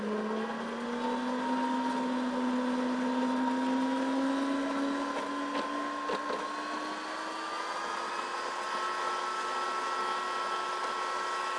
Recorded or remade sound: recorded